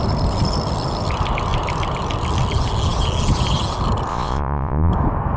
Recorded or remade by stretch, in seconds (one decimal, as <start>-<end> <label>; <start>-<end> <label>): 0.0-4.1 recorded; 4.1-4.9 remade; 4.9-5.4 recorded